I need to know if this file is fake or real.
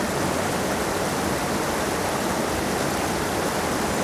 real